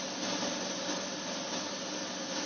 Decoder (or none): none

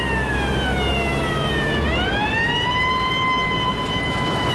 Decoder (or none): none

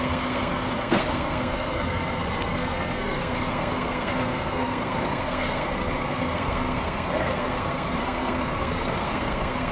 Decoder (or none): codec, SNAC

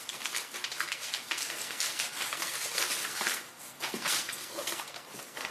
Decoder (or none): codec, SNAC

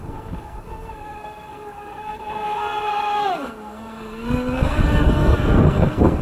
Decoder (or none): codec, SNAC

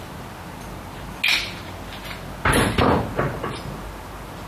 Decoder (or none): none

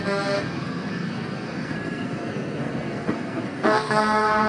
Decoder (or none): codec, SNAC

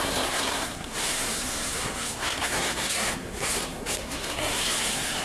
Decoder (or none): codec, SNAC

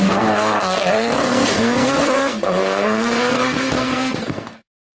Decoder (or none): codec, SNAC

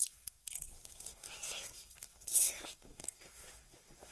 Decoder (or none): codec, SNAC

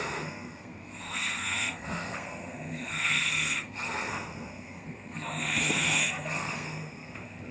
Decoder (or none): codec, SNAC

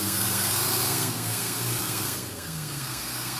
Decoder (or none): codec, SNAC